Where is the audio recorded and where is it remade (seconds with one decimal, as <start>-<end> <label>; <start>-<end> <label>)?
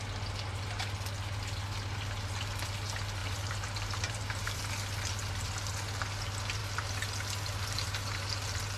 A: 0.0-3.2 recorded; 3.2-4.6 remade; 4.6-8.8 recorded